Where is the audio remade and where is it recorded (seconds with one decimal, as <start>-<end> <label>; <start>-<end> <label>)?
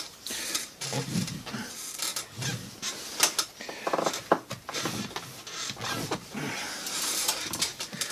0.0-2.1 remade; 2.1-6.0 recorded; 6.0-8.1 remade